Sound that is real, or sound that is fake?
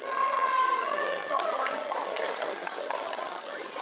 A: fake